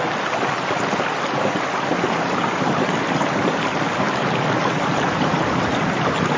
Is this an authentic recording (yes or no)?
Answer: yes